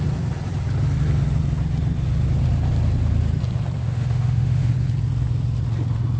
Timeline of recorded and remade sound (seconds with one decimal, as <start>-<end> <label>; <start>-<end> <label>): 0.0-3.8 recorded; 3.8-4.7 remade; 4.7-6.2 recorded